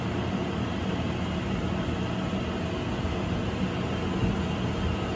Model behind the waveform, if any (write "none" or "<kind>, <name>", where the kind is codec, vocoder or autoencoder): none